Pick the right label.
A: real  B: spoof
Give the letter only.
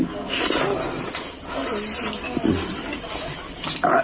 A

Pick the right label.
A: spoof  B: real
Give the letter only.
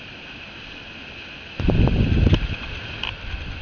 B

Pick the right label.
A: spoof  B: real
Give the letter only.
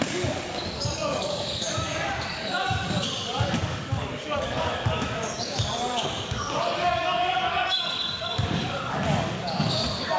A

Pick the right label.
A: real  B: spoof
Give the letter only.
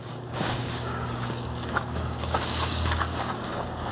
B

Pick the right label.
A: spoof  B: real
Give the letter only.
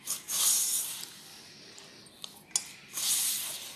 B